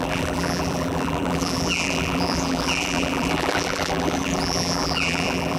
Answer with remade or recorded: remade